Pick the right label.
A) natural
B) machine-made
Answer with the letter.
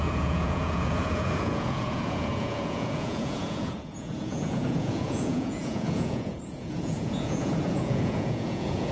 B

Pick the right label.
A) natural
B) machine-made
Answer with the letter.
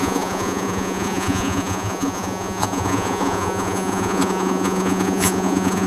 B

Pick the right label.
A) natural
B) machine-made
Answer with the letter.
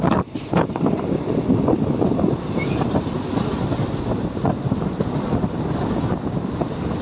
A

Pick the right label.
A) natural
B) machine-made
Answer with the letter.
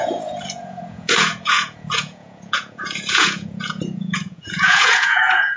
B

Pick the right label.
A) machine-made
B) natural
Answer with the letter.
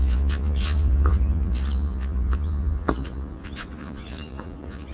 A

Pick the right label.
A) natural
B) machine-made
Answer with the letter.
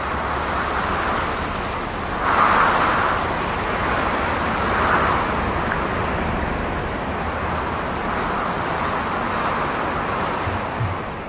A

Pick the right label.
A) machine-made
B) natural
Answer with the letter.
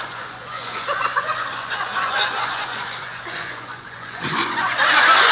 A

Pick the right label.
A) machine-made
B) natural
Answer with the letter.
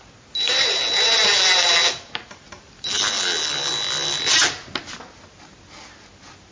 B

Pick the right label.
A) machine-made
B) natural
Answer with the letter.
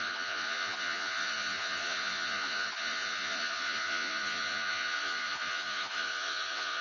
A